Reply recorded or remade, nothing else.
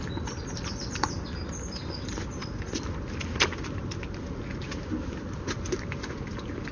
recorded